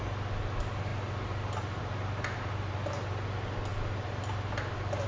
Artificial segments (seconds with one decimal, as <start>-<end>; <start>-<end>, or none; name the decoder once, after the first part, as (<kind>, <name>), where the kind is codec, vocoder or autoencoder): none

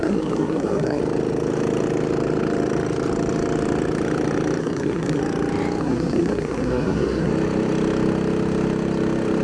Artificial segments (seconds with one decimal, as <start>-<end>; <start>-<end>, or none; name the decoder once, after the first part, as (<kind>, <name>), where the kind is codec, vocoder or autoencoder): 0.0-1.0 (codec, SNAC); 4.6-5.2; 5.8-7.3

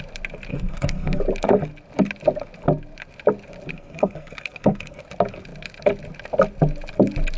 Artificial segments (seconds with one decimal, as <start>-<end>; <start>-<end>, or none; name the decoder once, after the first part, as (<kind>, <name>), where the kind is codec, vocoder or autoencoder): 0.5-1.2 (codec, SNAC); 3.7-5.0

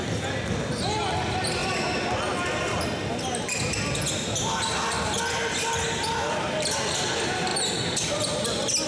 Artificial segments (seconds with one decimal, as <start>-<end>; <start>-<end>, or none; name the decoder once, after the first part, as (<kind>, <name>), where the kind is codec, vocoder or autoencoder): none

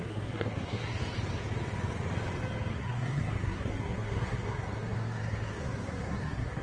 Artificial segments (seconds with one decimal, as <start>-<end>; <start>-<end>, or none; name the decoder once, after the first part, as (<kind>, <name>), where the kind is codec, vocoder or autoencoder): 0.0-1.0 (codec, SNAC); 2.7-6.6